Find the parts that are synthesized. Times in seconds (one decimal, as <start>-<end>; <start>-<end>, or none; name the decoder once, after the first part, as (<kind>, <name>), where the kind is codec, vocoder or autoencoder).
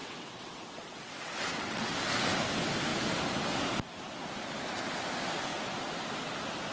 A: 0.0-1.9 (vocoder, WaveNeXt)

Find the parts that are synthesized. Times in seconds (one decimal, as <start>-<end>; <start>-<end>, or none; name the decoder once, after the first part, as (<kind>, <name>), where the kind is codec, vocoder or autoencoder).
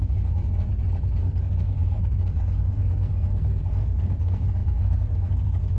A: 0.0-0.7 (codec, SNAC); 1.2-5.8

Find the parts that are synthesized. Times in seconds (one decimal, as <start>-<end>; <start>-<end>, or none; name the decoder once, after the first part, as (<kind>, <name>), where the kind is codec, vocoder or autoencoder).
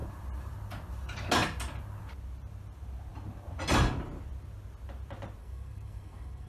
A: 5.4-6.5 (codec, SNAC)